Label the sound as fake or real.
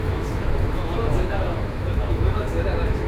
fake